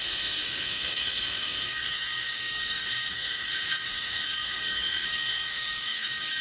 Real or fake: fake